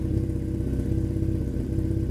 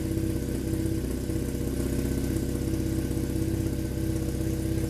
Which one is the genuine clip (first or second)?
second